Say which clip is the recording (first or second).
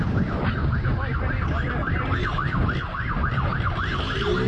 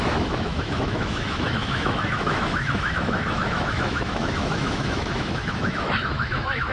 first